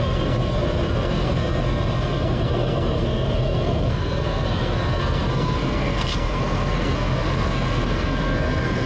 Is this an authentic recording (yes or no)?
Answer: no